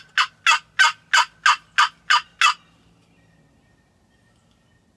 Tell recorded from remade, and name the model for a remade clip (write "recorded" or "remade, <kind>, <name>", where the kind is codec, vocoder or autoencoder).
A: recorded